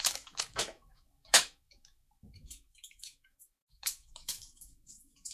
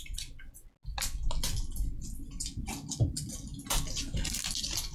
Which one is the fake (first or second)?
first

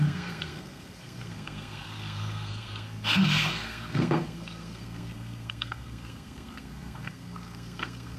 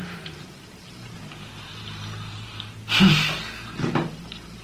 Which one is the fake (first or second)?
first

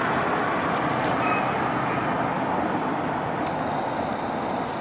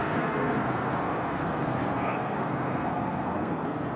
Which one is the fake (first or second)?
second